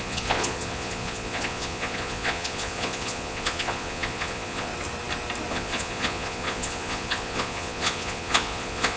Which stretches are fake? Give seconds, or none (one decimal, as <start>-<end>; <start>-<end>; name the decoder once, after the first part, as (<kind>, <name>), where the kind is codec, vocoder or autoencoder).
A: 0.0-4.7 (vocoder, Vocos); 5.5-9.0